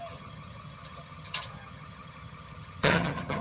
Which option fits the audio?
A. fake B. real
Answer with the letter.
A